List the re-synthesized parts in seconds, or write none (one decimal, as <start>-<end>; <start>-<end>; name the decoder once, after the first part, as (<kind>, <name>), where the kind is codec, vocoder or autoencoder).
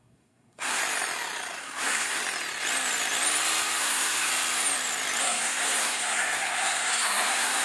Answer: 0.0-0.8 (codec, SNAC); 1.6-2.2; 3.8-4.3; 5.2-7.6